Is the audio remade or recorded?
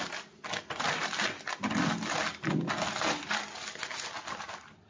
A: recorded